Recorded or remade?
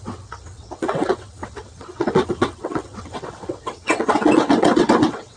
remade